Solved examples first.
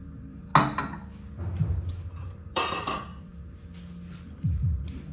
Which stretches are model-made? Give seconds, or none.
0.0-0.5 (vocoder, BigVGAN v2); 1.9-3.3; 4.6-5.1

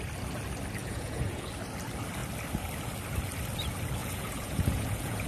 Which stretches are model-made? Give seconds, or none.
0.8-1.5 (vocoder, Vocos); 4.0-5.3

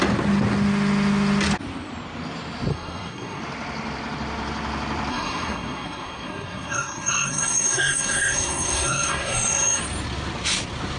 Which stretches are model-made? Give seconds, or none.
2.7-3.4 (codec, SNAC); 5.1-9.8

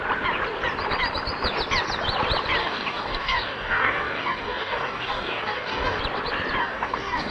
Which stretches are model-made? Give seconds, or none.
2.6-6.0 (codec, DAC); 6.6-7.3

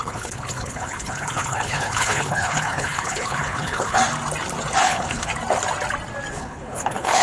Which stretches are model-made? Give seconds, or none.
0.0-4.0 (codec, HILCodec); 4.8-5.3; 6.3-7.2

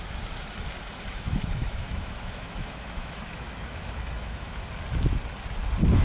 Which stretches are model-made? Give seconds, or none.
1.1-4.7 (autoencoder, DAC-VAE)

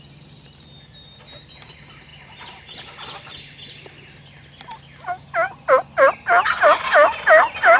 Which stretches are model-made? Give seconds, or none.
none